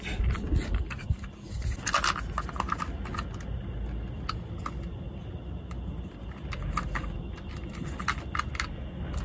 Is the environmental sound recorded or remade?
recorded